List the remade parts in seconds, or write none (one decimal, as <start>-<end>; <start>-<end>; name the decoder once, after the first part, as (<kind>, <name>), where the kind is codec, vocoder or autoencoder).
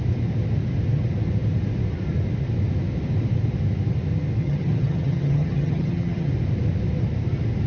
4.4-6.3 (vocoder, HiFi-GAN)